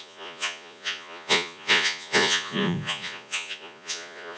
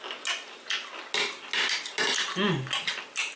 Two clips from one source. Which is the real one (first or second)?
second